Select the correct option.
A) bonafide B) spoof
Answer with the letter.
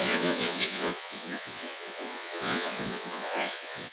B